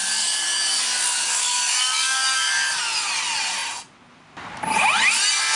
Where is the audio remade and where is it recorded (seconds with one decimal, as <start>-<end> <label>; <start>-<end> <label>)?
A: 0.0-0.7 remade; 0.7-1.1 recorded; 1.1-2.8 remade; 2.8-5.6 recorded

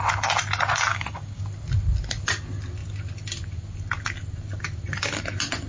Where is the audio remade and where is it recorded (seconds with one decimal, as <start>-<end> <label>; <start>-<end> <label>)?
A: 0.0-0.9 recorded; 0.9-1.4 remade; 1.4-5.7 recorded

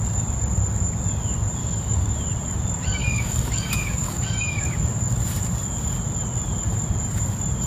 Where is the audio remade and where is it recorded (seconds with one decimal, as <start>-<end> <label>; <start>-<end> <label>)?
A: 0.0-1.6 recorded; 1.6-2.2 remade; 2.2-3.0 recorded; 3.0-4.8 remade; 4.8-7.7 recorded

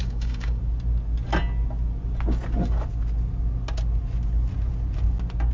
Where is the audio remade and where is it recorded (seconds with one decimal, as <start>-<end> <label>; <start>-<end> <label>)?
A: 0.0-0.6 remade; 0.6-5.5 recorded

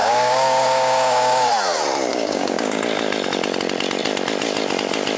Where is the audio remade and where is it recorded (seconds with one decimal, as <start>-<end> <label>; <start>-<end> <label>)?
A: 0.0-1.5 remade; 1.5-2.1 recorded; 2.1-2.8 remade; 2.8-5.2 recorded